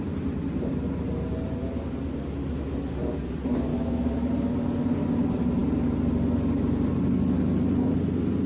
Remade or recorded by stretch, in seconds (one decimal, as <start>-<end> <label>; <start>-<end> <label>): 0.0-3.7 recorded; 3.7-4.3 remade; 4.3-8.5 recorded